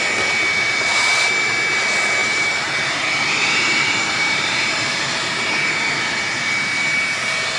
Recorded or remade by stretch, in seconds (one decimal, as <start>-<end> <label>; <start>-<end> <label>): 0.0-2.2 recorded; 2.2-5.7 remade; 5.7-7.6 recorded